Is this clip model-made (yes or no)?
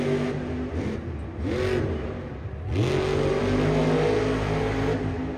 no